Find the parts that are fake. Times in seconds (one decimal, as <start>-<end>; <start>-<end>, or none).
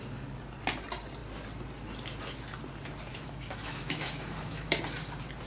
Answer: 3.1-4.8